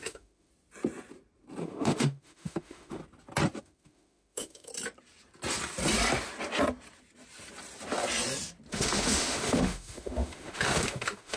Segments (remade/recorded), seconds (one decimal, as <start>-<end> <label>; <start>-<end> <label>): 0.0-0.5 remade; 0.5-1.6 recorded; 1.6-3.0 remade; 3.0-3.6 recorded; 3.6-4.7 remade; 4.7-8.7 recorded; 8.7-11.4 remade